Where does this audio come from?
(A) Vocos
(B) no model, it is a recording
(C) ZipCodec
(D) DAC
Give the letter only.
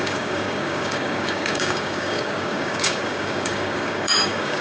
D